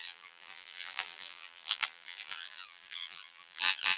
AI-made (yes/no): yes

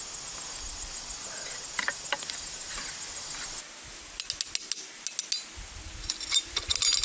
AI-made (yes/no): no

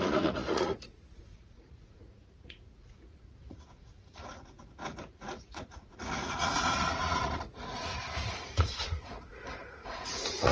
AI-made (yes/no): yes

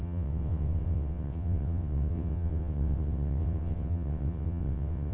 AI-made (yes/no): yes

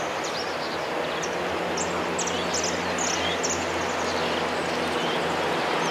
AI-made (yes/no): no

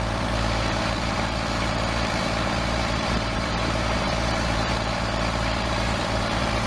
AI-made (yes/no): yes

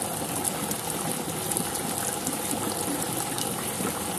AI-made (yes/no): yes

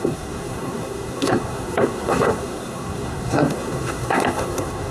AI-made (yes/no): yes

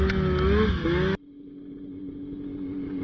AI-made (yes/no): no